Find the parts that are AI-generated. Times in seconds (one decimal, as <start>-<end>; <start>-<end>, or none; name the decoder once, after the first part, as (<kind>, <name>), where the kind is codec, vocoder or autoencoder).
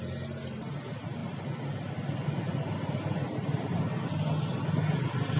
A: none